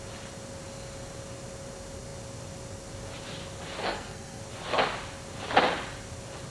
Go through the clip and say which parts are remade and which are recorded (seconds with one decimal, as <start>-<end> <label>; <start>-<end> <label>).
0.0-3.8 recorded; 3.8-4.4 remade; 4.4-6.5 recorded